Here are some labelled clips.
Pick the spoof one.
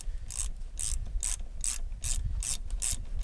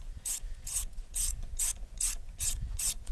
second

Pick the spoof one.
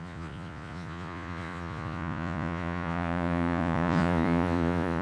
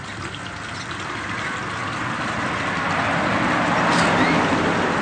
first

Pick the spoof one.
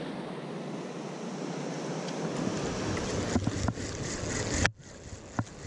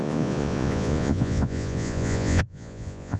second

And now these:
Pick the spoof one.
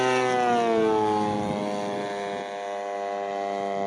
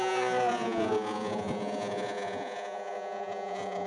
second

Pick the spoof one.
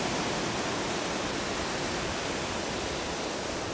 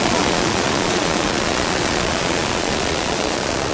second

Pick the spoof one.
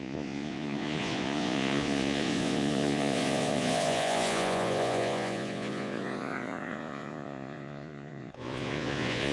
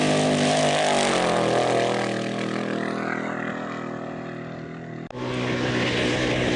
first